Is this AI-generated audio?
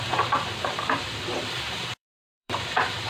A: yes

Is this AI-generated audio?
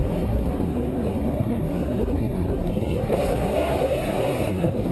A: yes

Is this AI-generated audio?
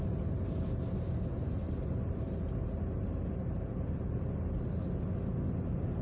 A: no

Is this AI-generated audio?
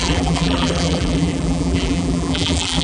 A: yes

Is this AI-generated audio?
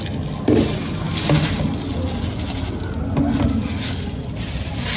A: no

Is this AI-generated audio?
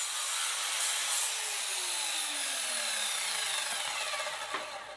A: no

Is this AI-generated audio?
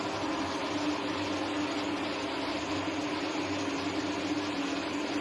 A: no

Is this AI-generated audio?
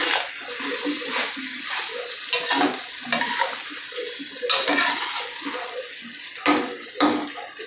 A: no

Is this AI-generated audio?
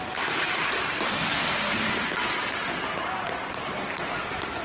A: no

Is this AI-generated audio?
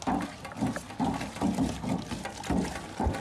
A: no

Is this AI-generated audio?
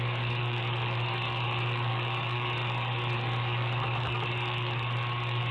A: yes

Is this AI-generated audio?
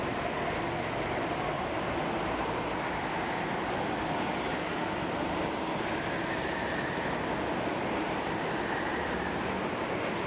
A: no